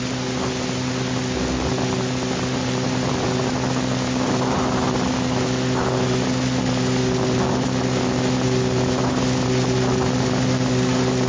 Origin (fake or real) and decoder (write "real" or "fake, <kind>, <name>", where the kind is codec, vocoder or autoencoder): real